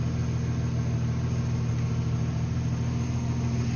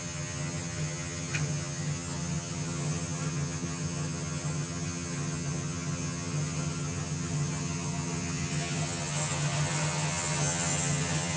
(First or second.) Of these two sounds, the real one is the first